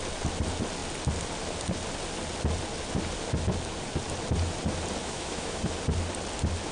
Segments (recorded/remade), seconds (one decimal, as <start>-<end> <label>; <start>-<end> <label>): 0.0-5.0 recorded; 5.0-5.6 remade; 5.6-6.7 recorded